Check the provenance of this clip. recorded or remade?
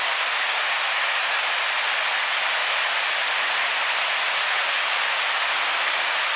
recorded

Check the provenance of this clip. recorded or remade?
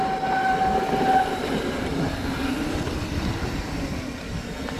recorded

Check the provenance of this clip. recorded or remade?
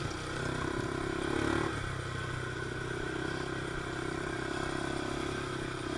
recorded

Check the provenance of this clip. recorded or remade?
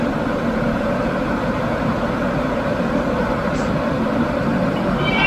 remade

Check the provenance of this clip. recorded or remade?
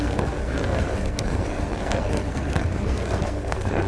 remade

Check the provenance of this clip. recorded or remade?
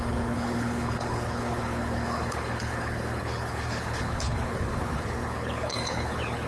remade